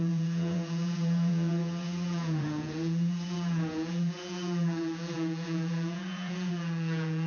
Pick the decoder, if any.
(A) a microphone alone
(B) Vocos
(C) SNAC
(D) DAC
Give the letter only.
B